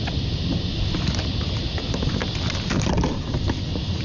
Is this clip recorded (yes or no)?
no